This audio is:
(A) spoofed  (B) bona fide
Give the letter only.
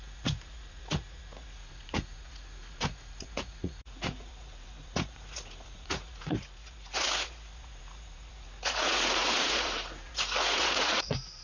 A